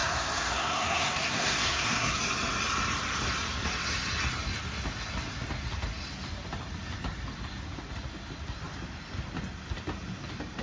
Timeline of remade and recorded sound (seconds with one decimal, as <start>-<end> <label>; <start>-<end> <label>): 0.0-2.2 remade; 2.2-10.6 recorded